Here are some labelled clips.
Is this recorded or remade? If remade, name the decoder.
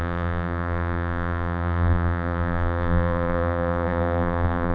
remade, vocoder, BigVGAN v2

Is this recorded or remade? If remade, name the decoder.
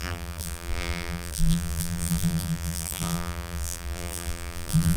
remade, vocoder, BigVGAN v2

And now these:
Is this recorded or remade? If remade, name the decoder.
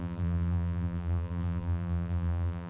remade, vocoder, BigVGAN v2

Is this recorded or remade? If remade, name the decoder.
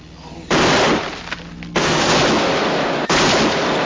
recorded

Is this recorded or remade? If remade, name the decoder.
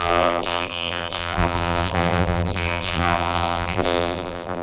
remade, vocoder, BigVGAN v2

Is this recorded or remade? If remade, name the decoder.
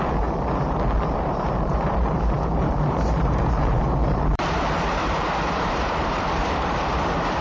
remade, vocoder, BigVGAN v2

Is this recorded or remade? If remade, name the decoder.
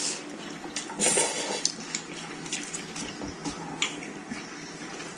recorded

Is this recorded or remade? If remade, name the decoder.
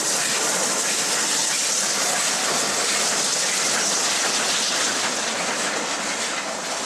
recorded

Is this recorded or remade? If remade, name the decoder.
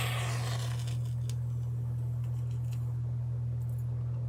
recorded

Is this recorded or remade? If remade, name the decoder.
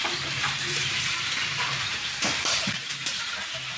remade, vocoder, BigVGAN v2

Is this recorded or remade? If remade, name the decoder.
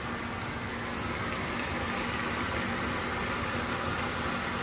recorded